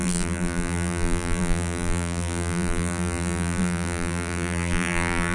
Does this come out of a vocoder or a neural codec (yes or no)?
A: yes